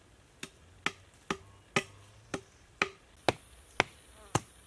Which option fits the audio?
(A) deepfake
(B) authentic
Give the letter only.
B